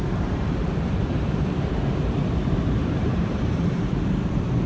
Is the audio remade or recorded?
remade